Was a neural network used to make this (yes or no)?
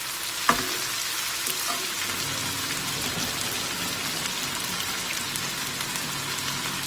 no